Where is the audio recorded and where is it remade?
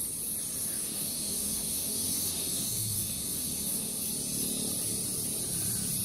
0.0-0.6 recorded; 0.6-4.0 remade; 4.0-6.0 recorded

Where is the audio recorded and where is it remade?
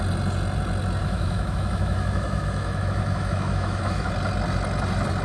0.0-1.0 recorded; 1.0-4.1 remade; 4.1-5.2 recorded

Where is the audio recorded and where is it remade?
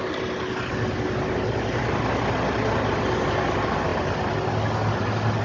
0.0-5.4 recorded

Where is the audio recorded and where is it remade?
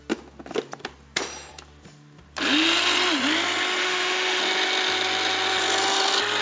0.0-3.8 recorded; 3.8-4.4 remade; 4.4-6.4 recorded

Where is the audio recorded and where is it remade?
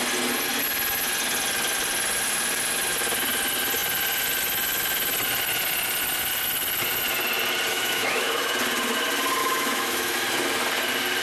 0.0-7.7 recorded; 7.7-8.5 remade; 8.5-9.4 recorded; 9.4-10.2 remade; 10.2-11.2 recorded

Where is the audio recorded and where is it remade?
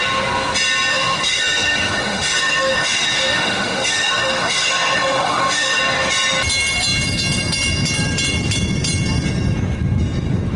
0.0-0.9 recorded; 0.9-5.8 remade; 5.8-10.6 recorded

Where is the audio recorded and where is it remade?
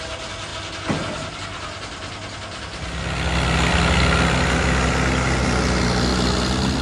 0.0-6.8 recorded